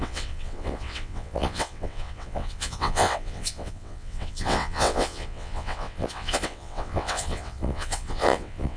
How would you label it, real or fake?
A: fake